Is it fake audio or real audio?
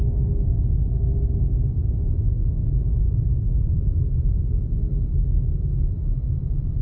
real